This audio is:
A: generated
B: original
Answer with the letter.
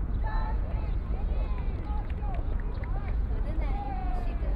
A